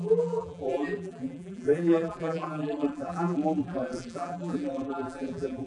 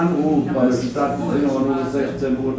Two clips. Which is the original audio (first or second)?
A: second